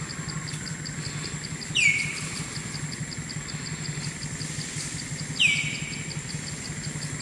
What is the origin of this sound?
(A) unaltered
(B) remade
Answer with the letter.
A